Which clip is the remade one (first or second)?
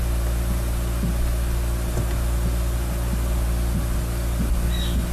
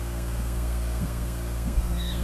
second